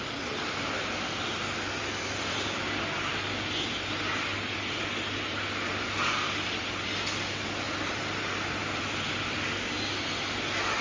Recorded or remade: recorded